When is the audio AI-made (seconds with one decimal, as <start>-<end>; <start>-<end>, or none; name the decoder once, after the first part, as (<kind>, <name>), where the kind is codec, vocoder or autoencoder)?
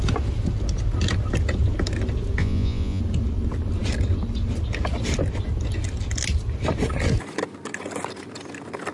2.4-3.0 (vocoder, Vocos)